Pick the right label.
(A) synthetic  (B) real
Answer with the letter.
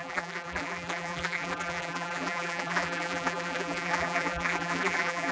A